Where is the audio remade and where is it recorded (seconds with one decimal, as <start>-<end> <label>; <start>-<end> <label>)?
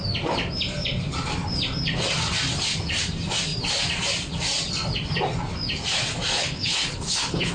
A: 0.0-6.3 recorded; 6.3-7.5 remade